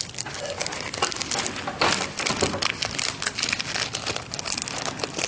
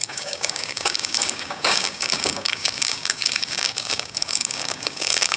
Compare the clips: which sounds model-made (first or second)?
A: second